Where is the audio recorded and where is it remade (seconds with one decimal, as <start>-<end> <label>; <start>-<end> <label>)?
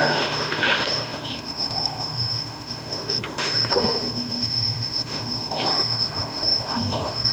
0.0-7.3 remade